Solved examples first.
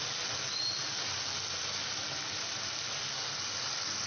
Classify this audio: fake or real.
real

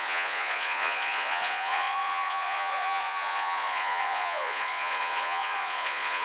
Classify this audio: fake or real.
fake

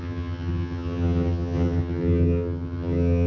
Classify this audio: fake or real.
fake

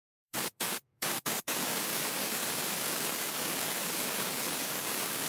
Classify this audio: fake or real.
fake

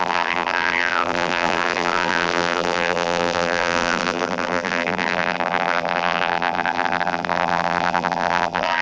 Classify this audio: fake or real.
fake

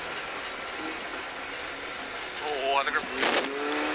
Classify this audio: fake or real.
real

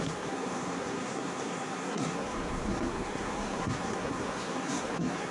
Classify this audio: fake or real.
fake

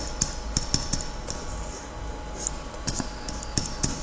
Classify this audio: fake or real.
real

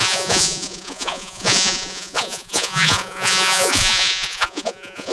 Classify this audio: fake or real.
fake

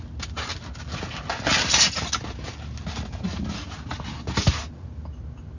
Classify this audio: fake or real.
real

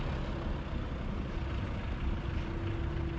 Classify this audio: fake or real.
real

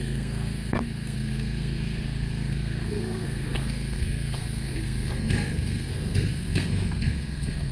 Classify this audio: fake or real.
fake